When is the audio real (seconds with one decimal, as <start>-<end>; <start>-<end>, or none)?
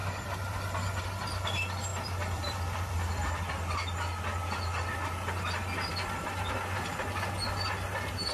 0.6-1.9; 3.4-8.3